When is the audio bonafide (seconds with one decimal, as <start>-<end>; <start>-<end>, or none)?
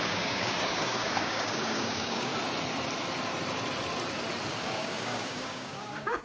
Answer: 2.3-4.6